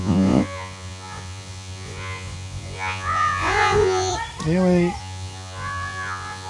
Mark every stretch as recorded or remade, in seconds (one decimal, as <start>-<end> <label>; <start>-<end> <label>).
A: 0.0-4.1 remade; 4.1-5.0 recorded; 5.0-6.5 remade